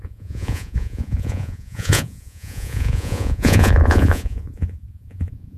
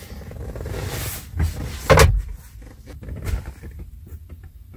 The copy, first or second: first